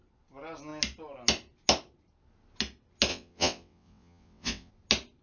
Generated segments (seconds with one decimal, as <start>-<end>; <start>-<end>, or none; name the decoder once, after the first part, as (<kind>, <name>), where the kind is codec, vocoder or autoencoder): 3.1-4.7 (vocoder, WaveNeXt)